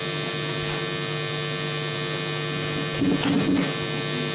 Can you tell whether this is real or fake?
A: real